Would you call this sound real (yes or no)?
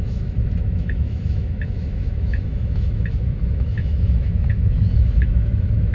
no